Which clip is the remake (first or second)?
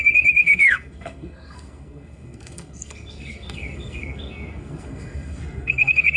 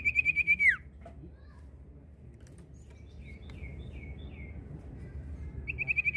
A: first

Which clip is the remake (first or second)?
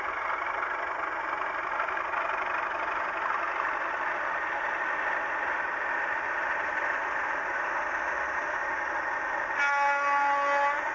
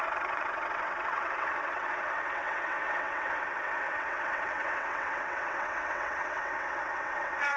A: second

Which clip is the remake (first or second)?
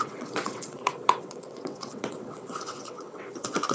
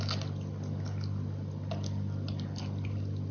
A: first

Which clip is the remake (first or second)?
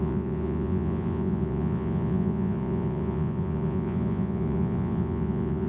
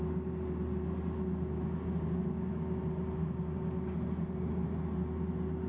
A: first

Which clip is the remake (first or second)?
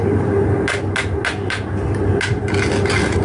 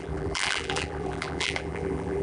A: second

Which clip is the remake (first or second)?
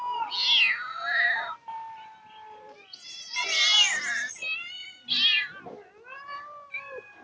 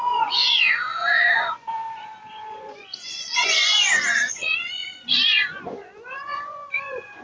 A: second